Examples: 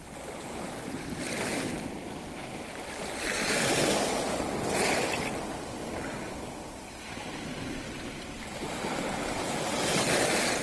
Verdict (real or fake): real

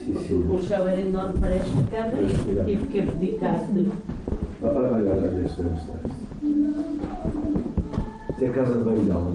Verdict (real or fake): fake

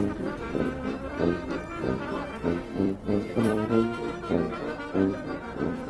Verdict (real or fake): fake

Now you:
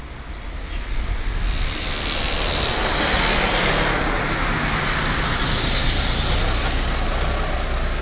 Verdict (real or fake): real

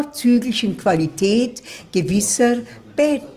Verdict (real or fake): real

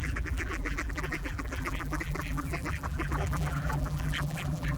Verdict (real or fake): fake